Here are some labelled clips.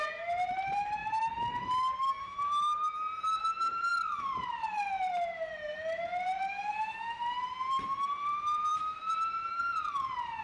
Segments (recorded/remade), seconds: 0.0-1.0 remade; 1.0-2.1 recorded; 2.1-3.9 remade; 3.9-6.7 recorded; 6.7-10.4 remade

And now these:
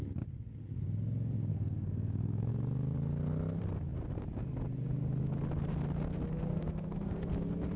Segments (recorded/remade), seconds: 0.0-1.5 recorded; 1.5-2.5 remade; 2.5-6.5 recorded; 6.5-7.3 remade; 7.3-7.8 recorded

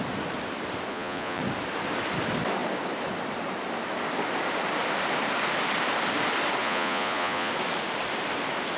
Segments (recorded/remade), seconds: 0.0-0.9 recorded; 0.9-1.4 remade; 1.4-6.6 recorded; 6.6-7.5 remade; 7.5-8.8 recorded

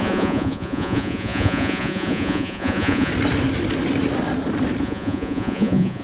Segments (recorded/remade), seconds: 0.0-3.1 remade; 3.1-4.8 recorded; 4.8-6.0 remade

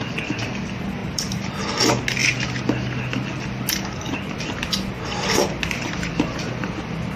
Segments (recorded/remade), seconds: 0.0-1.0 recorded; 1.0-1.5 remade; 1.5-7.2 recorded

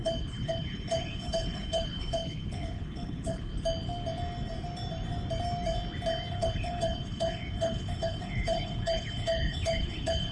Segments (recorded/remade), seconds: 0.0-3.5 remade; 3.5-6.3 recorded; 6.3-10.3 remade